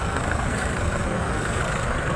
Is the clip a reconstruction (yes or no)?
yes